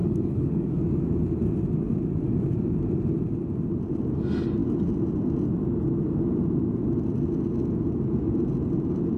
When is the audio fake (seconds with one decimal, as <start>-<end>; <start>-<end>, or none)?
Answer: 0.0-0.8